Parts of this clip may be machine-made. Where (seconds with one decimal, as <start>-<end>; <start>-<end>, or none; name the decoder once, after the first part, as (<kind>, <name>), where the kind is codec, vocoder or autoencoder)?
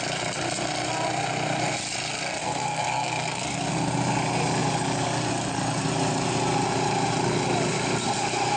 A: 2.4-3.7 (codec, SNAC)